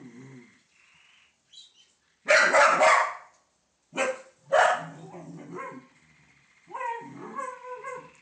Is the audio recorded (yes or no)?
yes